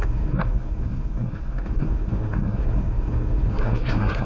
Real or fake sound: fake